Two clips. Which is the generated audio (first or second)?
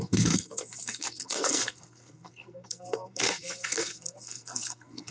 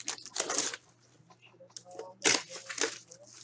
first